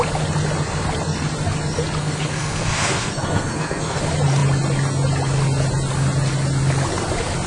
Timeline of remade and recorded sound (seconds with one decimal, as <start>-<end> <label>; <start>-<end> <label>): 0.0-2.0 recorded; 2.0-4.0 remade; 4.0-7.5 recorded